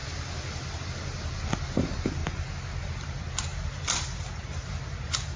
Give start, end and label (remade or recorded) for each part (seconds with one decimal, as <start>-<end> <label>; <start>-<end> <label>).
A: 0.0-5.4 recorded